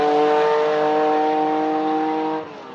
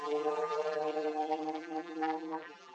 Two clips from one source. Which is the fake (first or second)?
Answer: second